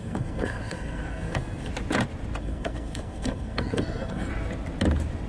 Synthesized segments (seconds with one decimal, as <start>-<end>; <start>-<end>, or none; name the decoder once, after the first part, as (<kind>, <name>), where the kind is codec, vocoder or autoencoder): 0.0-1.7 (codec, SNAC); 2.4-4.3